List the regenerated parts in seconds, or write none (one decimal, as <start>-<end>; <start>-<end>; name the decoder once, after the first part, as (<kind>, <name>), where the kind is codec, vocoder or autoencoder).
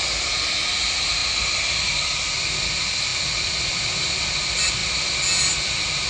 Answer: none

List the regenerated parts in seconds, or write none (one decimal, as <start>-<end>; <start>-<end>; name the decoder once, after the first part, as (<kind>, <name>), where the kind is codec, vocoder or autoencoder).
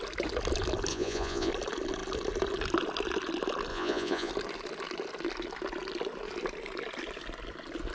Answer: 0.9-1.5 (vocoder, Vocos); 3.7-4.3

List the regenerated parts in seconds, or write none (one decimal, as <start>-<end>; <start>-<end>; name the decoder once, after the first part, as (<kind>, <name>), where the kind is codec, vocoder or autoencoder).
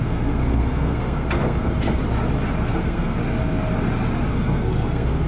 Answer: 0.0-2.0 (codec, SNAC); 2.7-3.2; 4.3-5.3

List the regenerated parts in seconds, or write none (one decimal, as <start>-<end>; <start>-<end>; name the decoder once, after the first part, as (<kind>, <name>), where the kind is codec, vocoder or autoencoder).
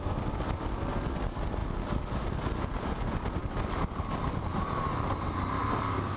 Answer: 5.6-6.2 (vocoder, BigVGAN v2)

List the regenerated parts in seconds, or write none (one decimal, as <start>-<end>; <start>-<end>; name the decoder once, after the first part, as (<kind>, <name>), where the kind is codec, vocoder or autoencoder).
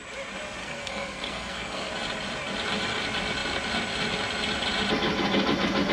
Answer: 0.6-1.9 (codec, SNAC)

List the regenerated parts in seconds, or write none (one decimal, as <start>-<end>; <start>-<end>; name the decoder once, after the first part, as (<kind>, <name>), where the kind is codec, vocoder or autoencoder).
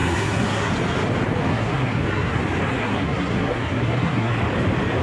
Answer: 0.0-0.7 (codec, SNAC); 1.5-2.4; 2.8-4.3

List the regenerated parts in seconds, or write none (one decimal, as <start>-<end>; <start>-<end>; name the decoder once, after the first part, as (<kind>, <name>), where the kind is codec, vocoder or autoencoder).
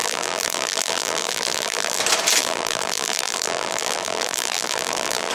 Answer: 0.0-2.0 (vocoder, BigVGAN v2); 2.4-5.3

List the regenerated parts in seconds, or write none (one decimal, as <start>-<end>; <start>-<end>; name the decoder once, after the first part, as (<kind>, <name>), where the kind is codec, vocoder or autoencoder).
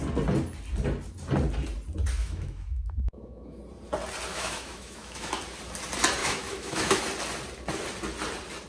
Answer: 2.2-3.6 (autoencoder, DAC-VAE); 4.3-5.3; 6.2-7.0